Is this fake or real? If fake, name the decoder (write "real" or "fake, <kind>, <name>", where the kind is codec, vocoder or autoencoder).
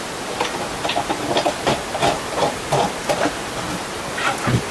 real